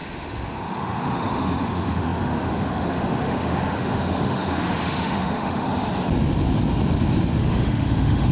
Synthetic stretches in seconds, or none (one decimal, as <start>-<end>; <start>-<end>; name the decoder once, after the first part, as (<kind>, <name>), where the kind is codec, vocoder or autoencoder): 0.0-5.7 (autoencoder, DAC-VAE); 7.4-8.3